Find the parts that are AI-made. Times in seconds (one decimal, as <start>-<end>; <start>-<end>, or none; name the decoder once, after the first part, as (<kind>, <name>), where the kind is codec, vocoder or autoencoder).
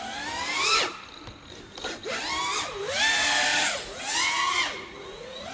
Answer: 3.5-5.5 (vocoder, Vocos)